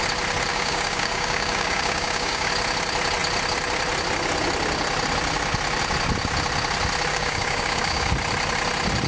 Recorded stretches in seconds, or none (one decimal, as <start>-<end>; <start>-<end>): 0.0-0.5; 2.5-7.1; 8.1-9.1